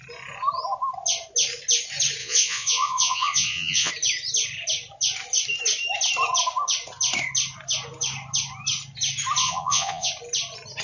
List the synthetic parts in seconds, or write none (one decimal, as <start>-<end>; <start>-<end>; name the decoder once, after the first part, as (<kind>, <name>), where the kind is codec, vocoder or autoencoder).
2.2-3.9 (vocoder, Vocos); 9.4-10.1